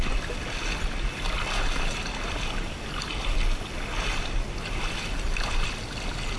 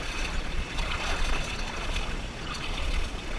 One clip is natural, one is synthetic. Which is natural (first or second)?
first